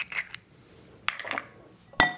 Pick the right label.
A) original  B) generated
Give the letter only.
A